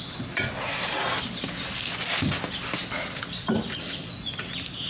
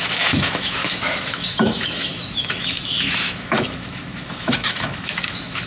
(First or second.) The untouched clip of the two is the first